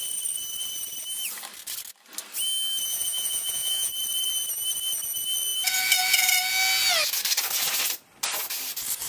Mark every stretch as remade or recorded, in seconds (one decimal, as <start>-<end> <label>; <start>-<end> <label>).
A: 0.0-2.9 recorded; 2.9-3.9 remade; 3.9-9.1 recorded

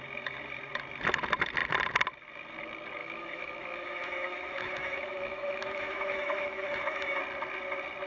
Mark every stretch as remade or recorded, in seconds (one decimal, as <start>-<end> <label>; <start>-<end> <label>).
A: 0.0-3.0 recorded; 3.0-7.2 remade; 7.2-8.1 recorded

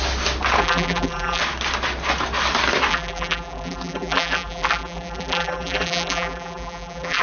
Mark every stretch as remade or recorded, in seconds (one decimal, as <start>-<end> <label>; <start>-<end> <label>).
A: 0.0-0.6 recorded; 0.6-1.4 remade; 1.4-2.9 recorded; 2.9-7.2 remade

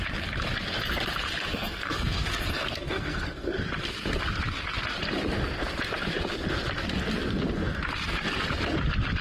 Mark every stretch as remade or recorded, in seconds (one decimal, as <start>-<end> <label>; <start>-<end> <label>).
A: 0.0-1.5 recorded; 1.5-3.6 remade; 3.6-9.2 recorded

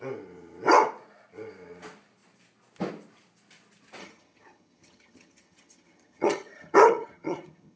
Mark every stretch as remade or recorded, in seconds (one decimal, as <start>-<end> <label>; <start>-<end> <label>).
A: 0.0-4.0 recorded; 4.0-7.8 remade

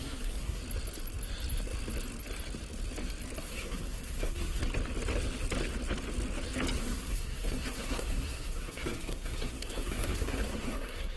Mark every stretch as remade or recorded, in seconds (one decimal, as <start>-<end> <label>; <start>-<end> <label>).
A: 0.0-0.6 remade; 0.6-3.4 recorded; 3.4-4.6 remade; 4.6-6.8 recorded; 6.8-11.2 remade

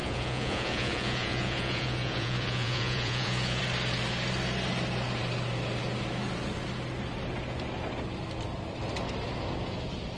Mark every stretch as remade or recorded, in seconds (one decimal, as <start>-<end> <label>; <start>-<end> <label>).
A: 0.0-3.6 remade; 3.6-10.2 recorded